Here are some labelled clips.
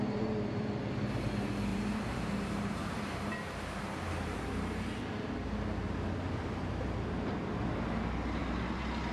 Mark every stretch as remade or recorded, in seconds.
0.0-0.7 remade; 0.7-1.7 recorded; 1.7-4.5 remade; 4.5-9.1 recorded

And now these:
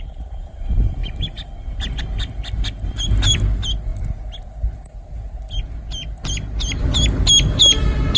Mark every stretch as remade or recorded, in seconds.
0.0-8.2 recorded